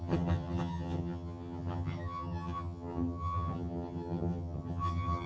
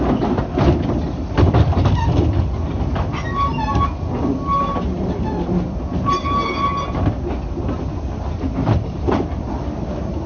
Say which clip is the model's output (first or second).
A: first